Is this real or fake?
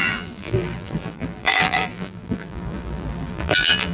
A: fake